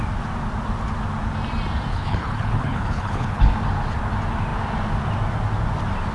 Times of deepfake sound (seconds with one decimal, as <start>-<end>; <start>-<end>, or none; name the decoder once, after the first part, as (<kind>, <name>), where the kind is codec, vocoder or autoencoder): 1.9-3.5 (codec, HILCodec)